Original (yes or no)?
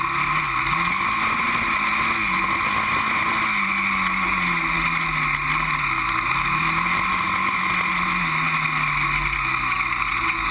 yes